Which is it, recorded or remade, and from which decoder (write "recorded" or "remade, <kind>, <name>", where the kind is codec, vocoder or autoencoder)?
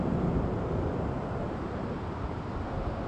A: recorded